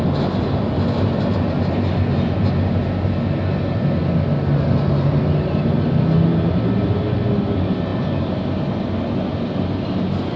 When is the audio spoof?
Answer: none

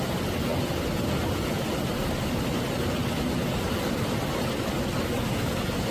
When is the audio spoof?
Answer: none

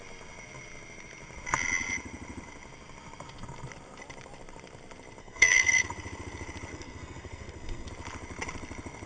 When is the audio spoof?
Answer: 5.2-5.8; 6.7-7.9

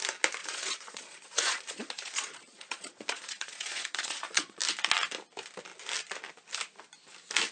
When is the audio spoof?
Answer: 0.4-4.6

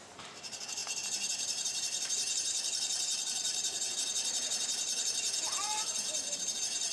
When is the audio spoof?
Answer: 0.0-6.9

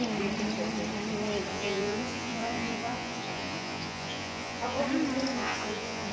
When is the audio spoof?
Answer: 1.5-4.8; 5.3-6.1

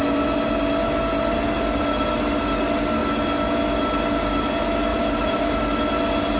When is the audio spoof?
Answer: 4.9-5.6

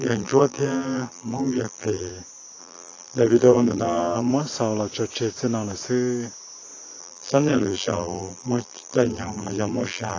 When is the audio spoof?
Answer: 0.0-2.1; 2.6-4.3; 7.0-10.2